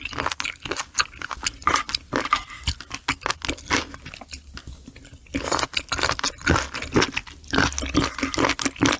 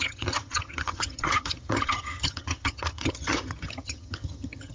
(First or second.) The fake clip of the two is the second